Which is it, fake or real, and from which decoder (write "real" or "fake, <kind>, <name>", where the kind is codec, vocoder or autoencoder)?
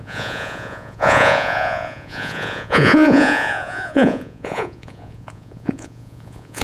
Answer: fake, vocoder, Vocos